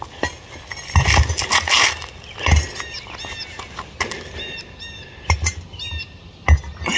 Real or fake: real